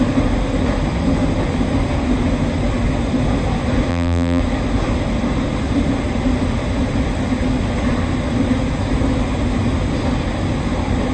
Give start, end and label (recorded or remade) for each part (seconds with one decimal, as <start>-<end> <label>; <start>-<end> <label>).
0.0-3.9 recorded; 3.9-4.4 remade; 4.4-11.1 recorded